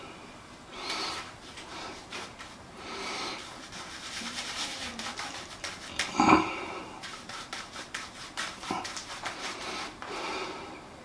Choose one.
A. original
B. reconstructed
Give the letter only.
B